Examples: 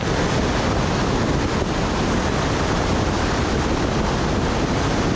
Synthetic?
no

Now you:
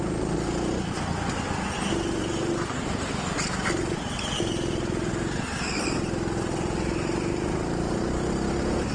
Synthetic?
no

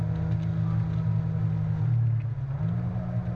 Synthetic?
no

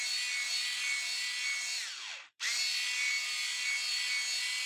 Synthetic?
no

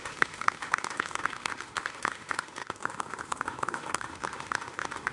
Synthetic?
yes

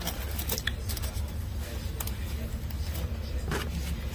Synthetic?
no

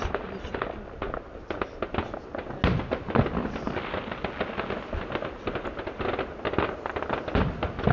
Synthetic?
no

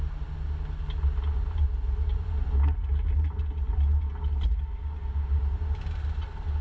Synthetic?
no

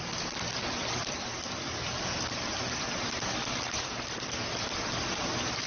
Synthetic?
no